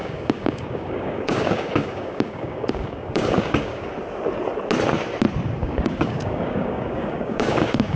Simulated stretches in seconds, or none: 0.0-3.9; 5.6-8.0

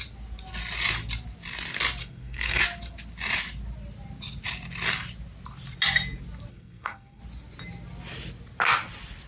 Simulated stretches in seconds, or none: 2.0-2.6; 6.5-7.2

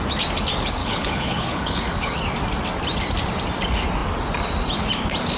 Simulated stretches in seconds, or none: 0.8-2.2

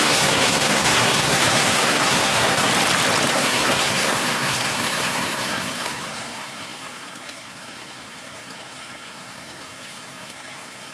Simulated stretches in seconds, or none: 0.0-2.7; 3.3-10.9

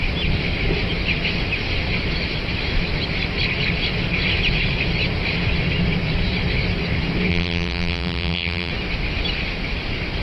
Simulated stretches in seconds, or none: 7.3-8.7

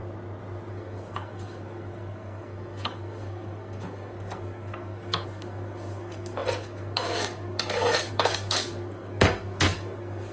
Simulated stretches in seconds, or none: 0.7-10.3

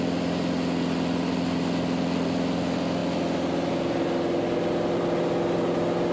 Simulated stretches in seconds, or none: none

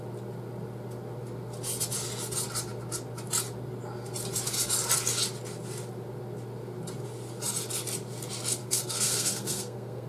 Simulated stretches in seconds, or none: 8.6-10.1